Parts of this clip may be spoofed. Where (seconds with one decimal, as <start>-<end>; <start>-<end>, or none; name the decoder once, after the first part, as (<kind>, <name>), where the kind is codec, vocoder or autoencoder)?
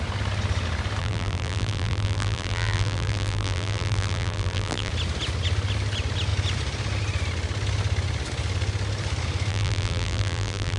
1.0-4.9 (vocoder, BigVGAN v2); 9.5-10.8